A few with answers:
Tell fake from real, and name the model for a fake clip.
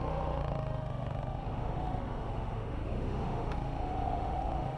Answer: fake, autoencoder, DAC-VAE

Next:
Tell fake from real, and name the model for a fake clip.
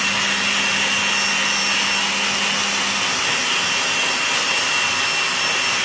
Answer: real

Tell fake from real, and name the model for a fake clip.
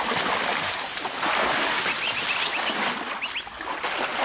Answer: real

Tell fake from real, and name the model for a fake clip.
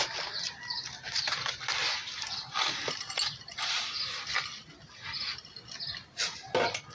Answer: real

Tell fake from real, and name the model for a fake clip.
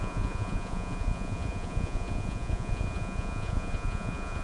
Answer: fake, vocoder, Vocos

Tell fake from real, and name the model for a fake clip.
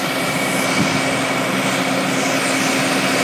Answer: real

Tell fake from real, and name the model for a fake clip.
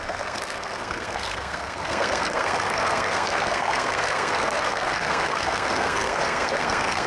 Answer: fake, codec, SNAC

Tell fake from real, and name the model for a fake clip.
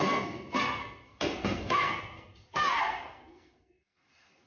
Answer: fake, codec, SNAC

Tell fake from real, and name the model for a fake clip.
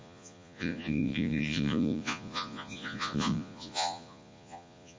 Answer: fake, vocoder, Vocos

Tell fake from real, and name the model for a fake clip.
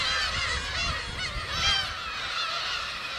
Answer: real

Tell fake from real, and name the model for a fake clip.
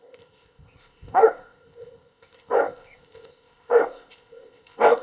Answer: fake, codec, ZipCodec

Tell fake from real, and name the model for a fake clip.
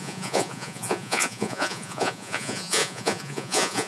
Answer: fake, vocoder, Vocos